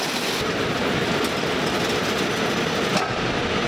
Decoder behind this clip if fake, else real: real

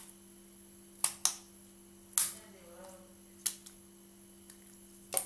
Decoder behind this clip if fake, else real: real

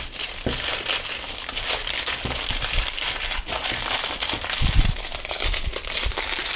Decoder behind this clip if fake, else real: real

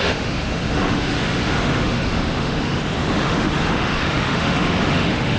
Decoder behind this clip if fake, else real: fake, autoencoder, DAC-VAE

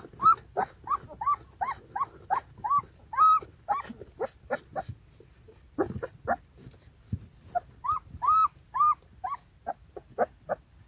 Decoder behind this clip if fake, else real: real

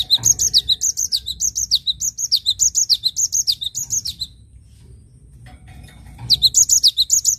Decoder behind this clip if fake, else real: real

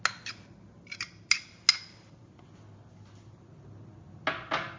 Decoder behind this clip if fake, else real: real